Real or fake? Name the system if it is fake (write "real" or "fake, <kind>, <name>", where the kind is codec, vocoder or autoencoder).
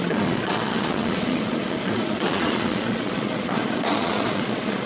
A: fake, vocoder, Vocos